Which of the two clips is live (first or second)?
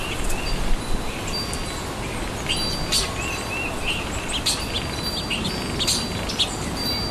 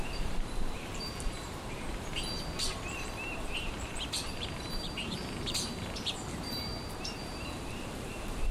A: first